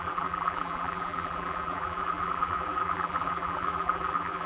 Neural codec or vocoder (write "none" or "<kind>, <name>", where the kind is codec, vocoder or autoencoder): vocoder, BigVGAN v2